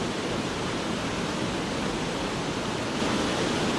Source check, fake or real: real